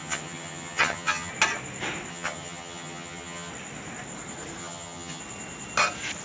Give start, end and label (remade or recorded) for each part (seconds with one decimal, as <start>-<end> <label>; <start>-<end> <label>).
0.0-1.3 remade; 1.3-2.1 recorded; 2.1-3.5 remade; 3.5-4.6 recorded; 4.6-5.2 remade; 5.2-6.2 recorded